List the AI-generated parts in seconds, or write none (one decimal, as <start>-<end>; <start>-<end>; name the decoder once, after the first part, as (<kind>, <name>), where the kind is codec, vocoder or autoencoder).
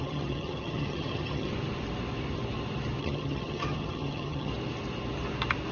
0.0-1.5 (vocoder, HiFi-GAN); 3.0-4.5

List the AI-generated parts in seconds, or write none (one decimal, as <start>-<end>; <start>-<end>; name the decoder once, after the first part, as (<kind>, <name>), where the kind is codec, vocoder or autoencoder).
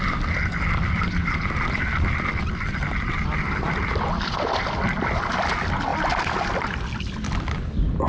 none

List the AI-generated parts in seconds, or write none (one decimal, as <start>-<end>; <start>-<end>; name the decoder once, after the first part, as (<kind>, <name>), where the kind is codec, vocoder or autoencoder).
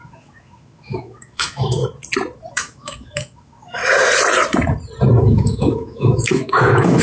0.0-1.8 (autoencoder, DAC-VAE); 2.5-3.8; 5.2-7.0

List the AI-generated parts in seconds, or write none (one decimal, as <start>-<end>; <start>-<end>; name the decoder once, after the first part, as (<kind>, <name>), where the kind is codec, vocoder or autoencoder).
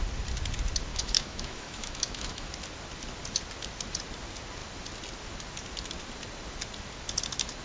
0.9-2.5 (autoencoder, DAC-VAE)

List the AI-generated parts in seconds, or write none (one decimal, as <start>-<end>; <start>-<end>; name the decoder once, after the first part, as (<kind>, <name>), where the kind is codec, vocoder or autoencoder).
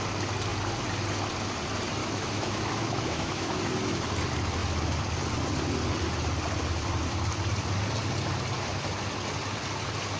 2.0-3.6 (autoencoder, DAC-VAE)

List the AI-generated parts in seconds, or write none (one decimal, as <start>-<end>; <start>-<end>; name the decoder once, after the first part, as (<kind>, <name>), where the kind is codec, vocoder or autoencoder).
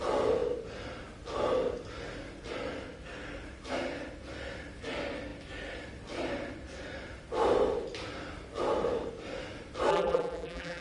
9.9-10.8 (vocoder, BigVGAN v2)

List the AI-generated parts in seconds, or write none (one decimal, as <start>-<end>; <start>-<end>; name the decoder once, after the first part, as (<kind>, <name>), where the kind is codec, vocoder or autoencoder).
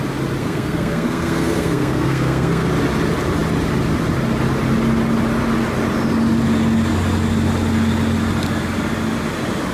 0.4-2.7 (codec, SNAC)